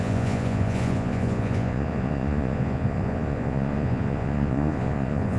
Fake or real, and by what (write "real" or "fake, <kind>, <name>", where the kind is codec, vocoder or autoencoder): fake, vocoder, Vocos